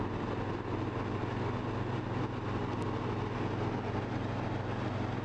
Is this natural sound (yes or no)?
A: yes